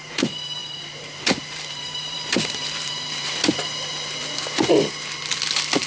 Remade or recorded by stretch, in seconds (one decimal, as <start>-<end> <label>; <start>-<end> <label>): 0.0-3.4 remade; 3.4-5.9 recorded